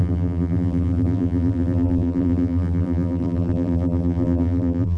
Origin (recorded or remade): remade